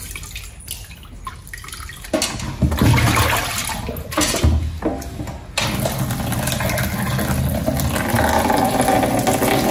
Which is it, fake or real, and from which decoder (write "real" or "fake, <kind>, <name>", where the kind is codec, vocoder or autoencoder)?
real